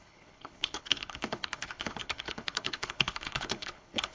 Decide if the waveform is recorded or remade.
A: remade